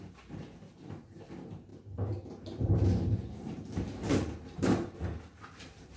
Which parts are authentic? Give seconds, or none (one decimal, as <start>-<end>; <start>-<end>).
0.0-6.0